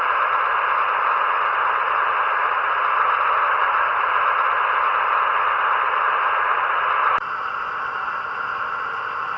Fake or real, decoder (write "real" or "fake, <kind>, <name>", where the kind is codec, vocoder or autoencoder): fake, vocoder, BigVGAN v2